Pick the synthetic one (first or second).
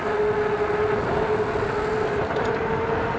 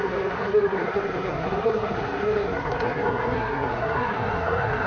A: second